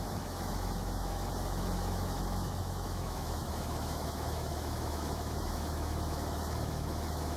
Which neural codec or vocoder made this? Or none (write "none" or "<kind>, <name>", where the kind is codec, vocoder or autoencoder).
autoencoder, DAC-VAE